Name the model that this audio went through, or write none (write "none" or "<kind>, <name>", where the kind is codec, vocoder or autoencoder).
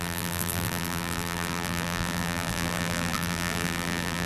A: vocoder, BigVGAN v2